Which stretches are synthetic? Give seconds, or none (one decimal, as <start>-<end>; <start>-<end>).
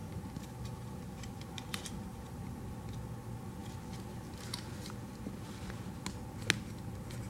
0.0-2.6